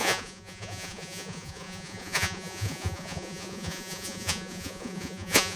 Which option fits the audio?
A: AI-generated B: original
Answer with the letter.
A